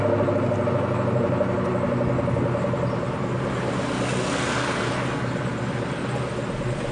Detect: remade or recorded recorded